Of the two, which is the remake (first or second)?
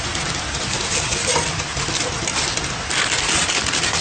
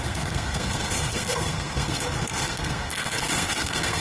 second